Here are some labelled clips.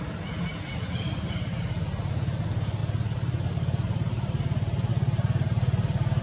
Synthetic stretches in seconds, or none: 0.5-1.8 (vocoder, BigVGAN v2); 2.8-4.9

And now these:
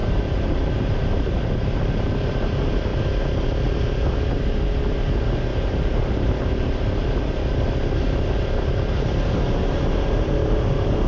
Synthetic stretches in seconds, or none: 0.0-2.3 (vocoder, BigVGAN v2); 5.5-6.3

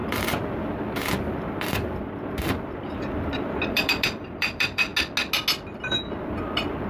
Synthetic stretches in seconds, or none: 0.0-4.9 (vocoder, BigVGAN v2); 6.4-6.9